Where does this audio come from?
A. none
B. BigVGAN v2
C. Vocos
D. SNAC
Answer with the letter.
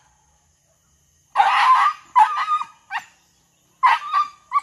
A